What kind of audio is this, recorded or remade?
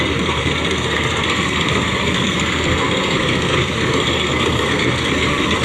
remade